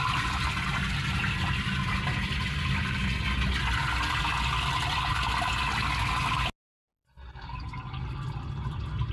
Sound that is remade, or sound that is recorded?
recorded